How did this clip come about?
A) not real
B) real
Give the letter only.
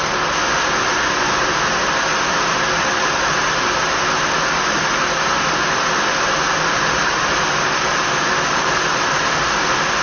B